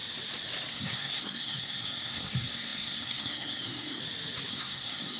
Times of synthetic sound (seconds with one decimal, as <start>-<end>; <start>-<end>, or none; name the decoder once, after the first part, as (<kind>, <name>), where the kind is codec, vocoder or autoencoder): 0.7-4.0 (codec, SNAC); 4.5-5.2